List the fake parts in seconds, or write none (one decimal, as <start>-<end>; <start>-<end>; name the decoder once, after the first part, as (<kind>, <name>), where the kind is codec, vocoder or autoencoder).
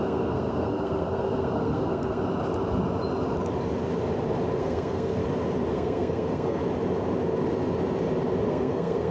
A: 0.0-2.2 (codec, SNAC); 4.6-5.2; 5.7-6.6; 8.5-9.1